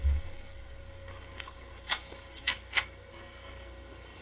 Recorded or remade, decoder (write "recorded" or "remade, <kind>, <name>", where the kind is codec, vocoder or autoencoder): remade, codec, SNAC